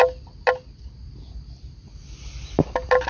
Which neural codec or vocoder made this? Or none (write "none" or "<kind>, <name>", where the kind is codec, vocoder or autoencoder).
none